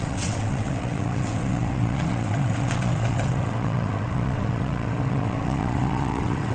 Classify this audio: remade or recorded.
remade